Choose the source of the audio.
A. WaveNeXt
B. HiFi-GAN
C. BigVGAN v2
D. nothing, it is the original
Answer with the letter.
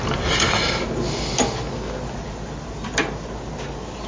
D